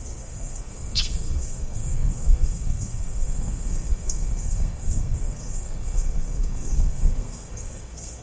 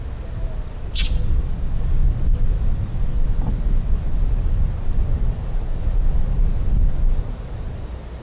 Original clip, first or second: second